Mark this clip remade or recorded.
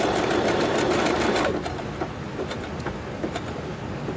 recorded